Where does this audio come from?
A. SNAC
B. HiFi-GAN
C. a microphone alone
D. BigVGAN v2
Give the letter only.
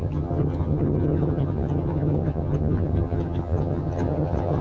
B